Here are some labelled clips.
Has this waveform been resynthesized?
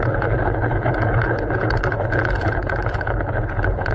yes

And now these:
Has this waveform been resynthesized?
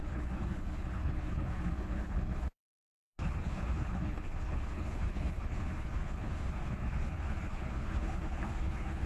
yes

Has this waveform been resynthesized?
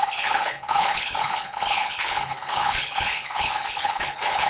yes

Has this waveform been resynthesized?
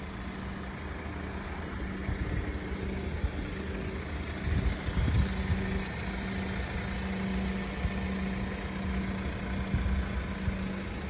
no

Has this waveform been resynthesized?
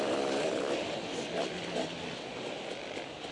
no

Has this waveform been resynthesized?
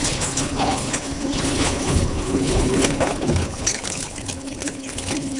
yes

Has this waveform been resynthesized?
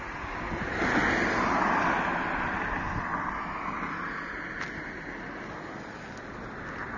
no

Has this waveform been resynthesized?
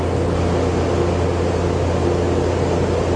no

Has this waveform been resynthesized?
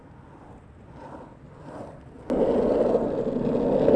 no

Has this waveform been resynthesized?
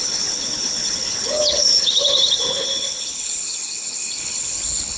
yes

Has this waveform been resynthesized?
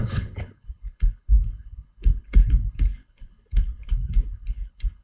yes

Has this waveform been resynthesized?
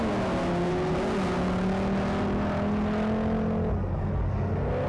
no